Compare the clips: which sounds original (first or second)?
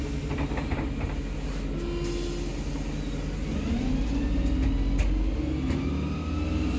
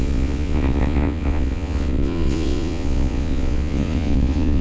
first